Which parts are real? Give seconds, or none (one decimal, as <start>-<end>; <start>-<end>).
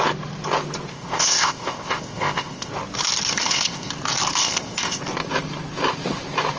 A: 0.0-0.9; 2.7-3.3; 3.9-4.4; 5.0-6.6